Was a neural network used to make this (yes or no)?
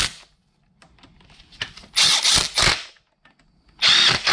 no